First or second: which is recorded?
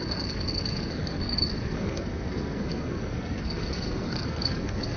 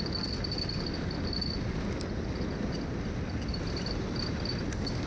second